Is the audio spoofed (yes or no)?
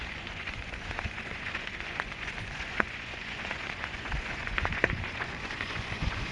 yes